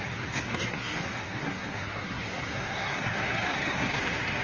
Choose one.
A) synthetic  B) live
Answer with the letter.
A